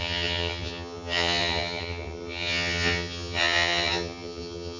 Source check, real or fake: fake